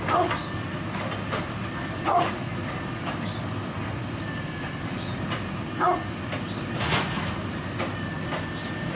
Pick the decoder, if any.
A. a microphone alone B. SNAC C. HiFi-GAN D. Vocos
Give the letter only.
A